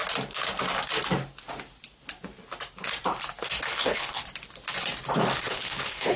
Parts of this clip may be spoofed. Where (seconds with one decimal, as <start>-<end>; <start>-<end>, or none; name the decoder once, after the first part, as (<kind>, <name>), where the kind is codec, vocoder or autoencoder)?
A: 3.7-4.2 (codec, HILCodec); 5.5-6.2